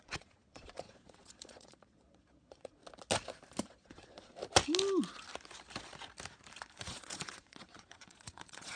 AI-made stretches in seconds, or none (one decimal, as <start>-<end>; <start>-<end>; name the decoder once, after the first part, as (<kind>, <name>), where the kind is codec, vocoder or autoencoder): 0.0-2.8 (vocoder, Vocos); 3.6-4.4; 6.8-8.8